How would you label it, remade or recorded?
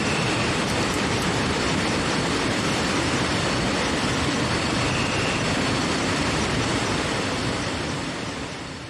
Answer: remade